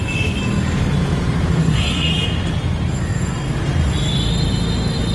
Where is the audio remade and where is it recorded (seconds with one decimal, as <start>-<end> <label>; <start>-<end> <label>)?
0.0-1.6 recorded; 1.6-2.1 remade; 2.1-5.1 recorded